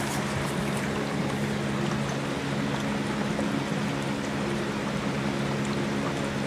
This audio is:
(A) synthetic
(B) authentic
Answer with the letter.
B